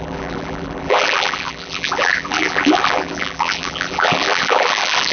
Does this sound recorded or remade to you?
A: remade